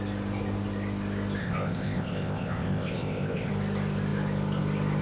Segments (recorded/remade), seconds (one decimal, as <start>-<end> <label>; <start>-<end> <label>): 0.0-1.4 recorded; 1.4-3.5 remade; 3.5-5.0 recorded